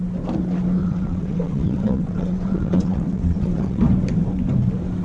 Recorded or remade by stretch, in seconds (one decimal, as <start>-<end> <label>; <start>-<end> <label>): 0.0-0.8 recorded; 0.8-3.8 remade; 3.8-5.0 recorded

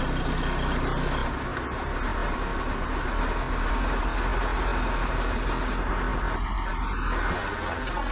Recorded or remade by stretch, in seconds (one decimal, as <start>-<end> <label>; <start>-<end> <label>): 0.0-8.1 recorded

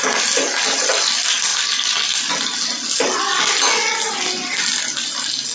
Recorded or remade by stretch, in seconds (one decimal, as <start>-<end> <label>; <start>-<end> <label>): 0.0-5.5 recorded